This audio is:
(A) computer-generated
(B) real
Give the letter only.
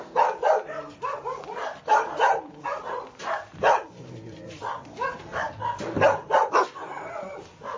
B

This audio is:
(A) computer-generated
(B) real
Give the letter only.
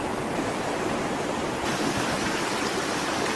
B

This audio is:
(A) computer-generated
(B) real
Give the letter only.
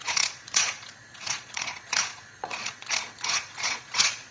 A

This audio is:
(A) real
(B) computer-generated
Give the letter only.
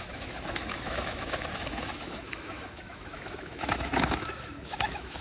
B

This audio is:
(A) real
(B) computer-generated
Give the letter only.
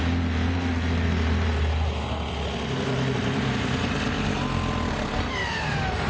A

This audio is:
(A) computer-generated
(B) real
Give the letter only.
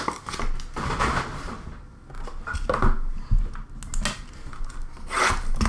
B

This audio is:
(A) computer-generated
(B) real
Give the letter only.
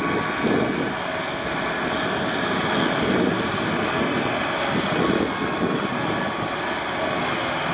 B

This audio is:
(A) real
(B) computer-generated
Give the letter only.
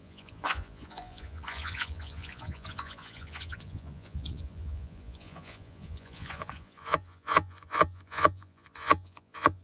B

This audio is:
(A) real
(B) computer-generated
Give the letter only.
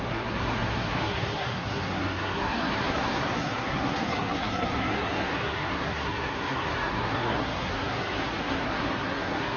B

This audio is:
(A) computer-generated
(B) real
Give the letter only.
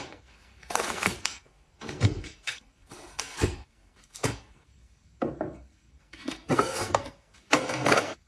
A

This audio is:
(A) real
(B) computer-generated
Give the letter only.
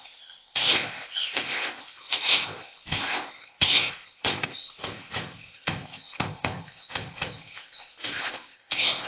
B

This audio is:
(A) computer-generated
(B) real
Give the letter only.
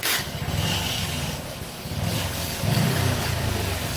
A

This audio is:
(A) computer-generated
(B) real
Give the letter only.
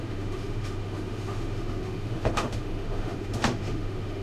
A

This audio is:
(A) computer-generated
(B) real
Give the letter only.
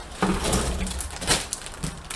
A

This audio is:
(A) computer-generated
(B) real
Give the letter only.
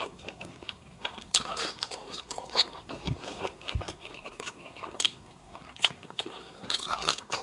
A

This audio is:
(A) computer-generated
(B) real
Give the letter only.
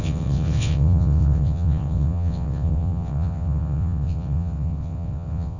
A